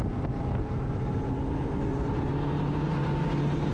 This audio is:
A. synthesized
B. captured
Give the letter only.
B